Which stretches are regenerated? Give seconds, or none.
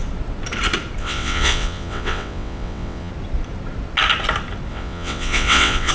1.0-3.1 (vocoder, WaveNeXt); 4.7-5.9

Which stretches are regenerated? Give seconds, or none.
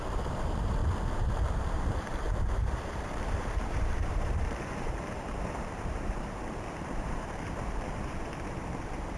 0.0-0.8 (vocoder, BigVGAN v2); 1.5-9.2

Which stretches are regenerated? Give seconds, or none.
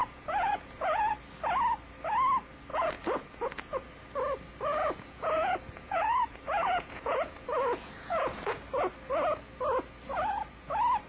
0.0-1.1 (vocoder, Vocos); 2.7-3.9; 4.8-8.6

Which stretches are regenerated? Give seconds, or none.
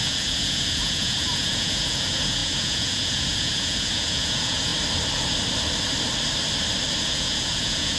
0.0-4.7 (vocoder, Vocos); 7.0-8.0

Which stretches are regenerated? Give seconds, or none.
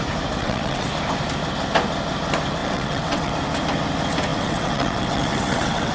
0.4-0.9 (vocoder, WaveNeXt); 2.6-3.3; 4.3-5.9